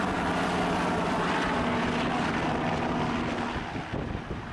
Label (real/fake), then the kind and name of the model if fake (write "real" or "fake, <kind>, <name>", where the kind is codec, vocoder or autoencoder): real